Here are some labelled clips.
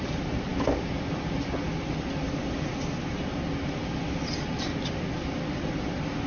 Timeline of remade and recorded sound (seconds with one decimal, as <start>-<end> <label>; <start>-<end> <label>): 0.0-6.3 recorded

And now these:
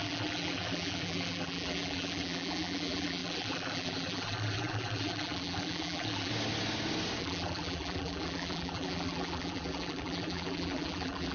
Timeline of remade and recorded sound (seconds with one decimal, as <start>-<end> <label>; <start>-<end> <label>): 0.0-6.3 remade; 6.3-7.2 recorded; 7.2-11.3 remade

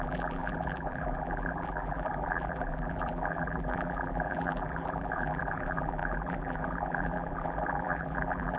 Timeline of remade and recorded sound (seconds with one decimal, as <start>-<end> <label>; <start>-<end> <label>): 0.0-8.6 remade

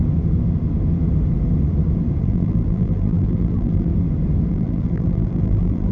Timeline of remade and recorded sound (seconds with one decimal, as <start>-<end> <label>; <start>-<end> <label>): 0.0-2.2 recorded; 2.2-3.9 remade; 3.9-4.5 recorded; 4.5-5.9 remade